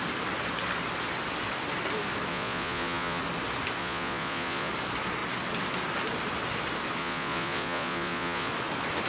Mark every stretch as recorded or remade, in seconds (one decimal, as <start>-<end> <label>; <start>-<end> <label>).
0.0-2.3 recorded; 2.3-3.2 remade; 3.2-3.8 recorded; 3.8-4.7 remade; 4.7-7.0 recorded; 7.0-8.5 remade; 8.5-9.1 recorded